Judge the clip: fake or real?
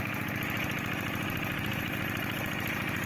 real